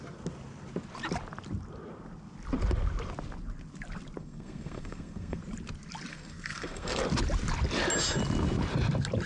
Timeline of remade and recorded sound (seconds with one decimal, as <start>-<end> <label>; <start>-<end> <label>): 0.0-4.2 recorded; 4.2-5.4 remade; 5.4-6.1 recorded; 6.1-7.0 remade; 7.0-9.3 recorded